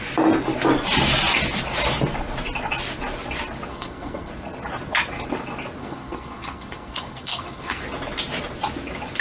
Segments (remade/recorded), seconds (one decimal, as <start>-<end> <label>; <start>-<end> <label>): 0.0-3.7 recorded; 3.7-4.3 remade; 4.3-5.8 recorded; 5.8-7.8 remade; 7.8-9.2 recorded